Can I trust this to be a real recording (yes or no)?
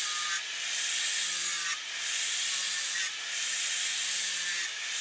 yes